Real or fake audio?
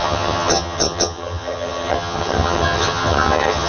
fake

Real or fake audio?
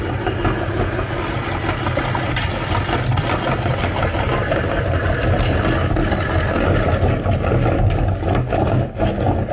real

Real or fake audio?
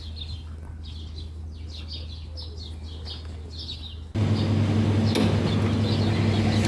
real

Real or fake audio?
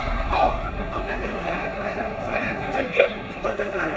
fake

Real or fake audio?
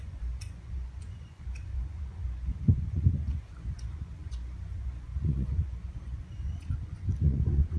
fake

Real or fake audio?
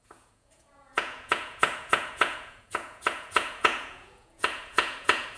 fake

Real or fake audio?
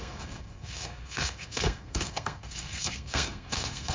fake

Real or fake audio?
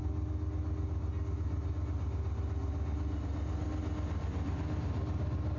real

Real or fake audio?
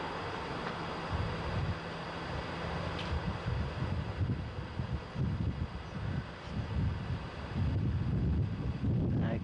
real